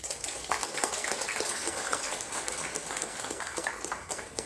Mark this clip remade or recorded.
remade